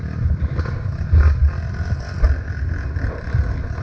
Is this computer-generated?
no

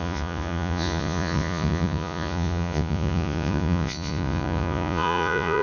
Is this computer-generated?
yes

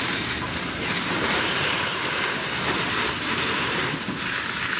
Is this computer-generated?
yes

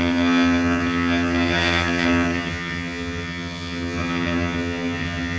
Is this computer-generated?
yes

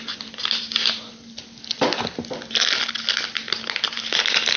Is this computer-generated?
no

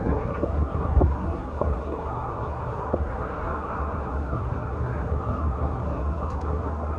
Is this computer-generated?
yes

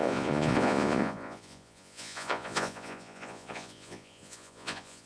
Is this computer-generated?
yes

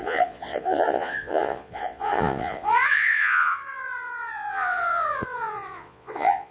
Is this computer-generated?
yes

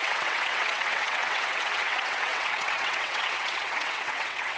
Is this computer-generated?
yes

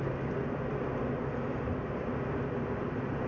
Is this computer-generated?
no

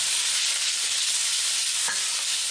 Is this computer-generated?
no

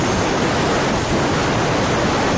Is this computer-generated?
no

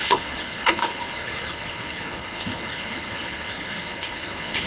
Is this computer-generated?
yes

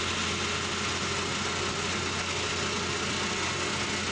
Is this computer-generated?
no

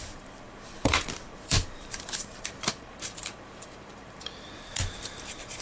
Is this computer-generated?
yes